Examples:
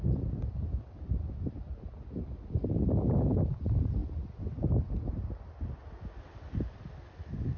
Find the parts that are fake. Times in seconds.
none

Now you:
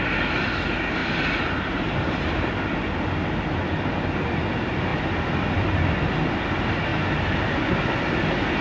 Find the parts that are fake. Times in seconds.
1.0-2.5 (vocoder, BigVGAN v2)

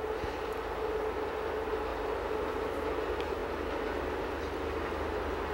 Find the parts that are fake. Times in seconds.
none

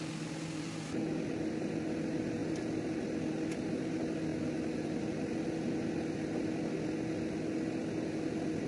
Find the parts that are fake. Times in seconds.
4.3-5.1 (vocoder, BigVGAN v2)

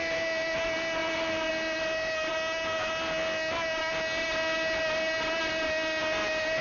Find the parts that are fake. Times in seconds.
1.0-1.5 (vocoder, BigVGAN v2)

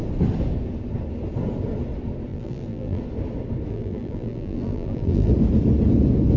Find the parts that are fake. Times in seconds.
2.3-3.0 (vocoder, BigVGAN v2); 3.7-5.3